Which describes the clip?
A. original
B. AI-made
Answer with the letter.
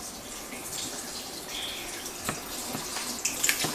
A